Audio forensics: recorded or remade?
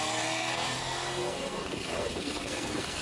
remade